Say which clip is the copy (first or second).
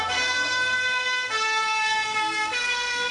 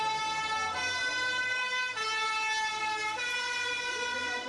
first